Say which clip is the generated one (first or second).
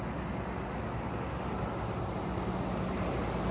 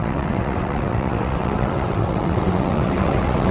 second